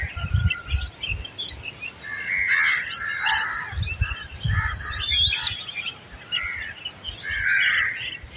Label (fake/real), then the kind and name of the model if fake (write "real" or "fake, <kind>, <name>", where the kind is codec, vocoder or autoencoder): real